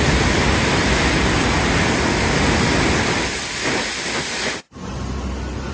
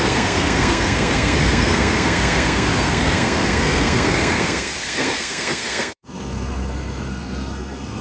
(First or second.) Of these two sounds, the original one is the first